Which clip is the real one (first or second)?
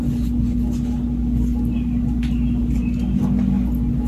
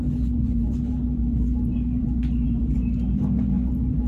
first